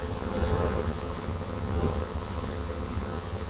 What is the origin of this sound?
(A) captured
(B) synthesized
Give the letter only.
B